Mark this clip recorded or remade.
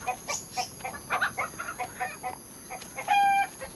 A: recorded